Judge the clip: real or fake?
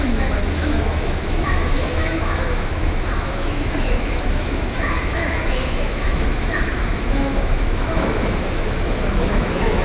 fake